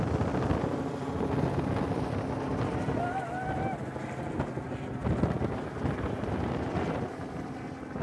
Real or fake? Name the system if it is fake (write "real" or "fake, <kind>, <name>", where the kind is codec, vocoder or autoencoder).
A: real